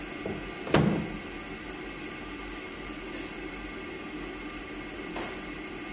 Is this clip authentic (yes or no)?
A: yes